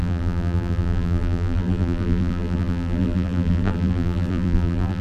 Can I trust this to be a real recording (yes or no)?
no